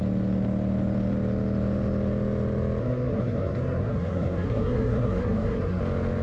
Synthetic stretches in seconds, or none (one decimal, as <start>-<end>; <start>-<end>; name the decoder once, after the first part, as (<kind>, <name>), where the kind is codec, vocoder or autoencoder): 2.8-5.8 (codec, SNAC)